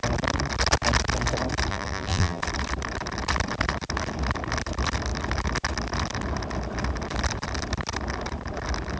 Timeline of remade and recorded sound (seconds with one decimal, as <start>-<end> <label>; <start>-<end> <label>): 0.0-1.7 recorded; 1.7-2.4 remade; 2.4-9.0 recorded